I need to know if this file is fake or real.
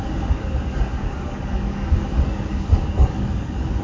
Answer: fake